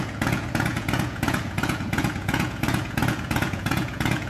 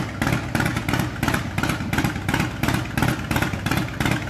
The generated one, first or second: first